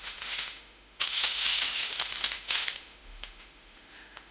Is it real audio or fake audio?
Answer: fake